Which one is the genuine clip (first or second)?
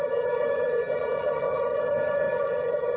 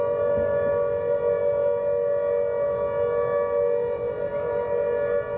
second